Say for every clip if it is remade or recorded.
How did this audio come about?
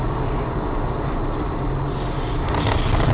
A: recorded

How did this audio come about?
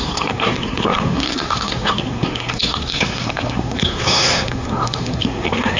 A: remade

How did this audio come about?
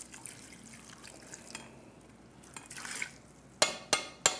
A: recorded